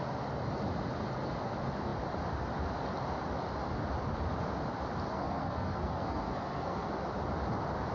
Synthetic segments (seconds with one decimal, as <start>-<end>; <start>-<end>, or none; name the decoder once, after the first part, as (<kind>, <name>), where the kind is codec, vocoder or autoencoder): 5.1-6.9 (codec, SNAC)